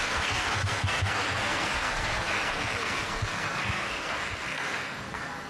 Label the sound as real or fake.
fake